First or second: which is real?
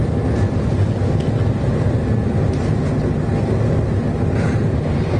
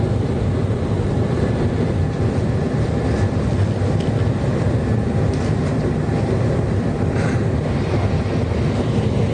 first